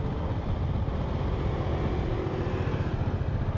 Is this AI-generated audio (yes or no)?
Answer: yes